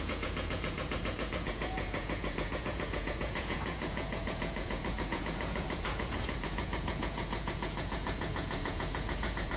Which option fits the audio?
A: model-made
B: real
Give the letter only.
A